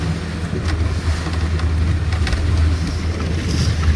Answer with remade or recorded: recorded